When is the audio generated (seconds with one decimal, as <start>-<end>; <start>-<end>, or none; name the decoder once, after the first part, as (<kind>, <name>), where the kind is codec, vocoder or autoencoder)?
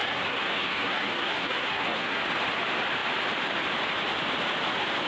0.0-2.2 (codec, SNAC)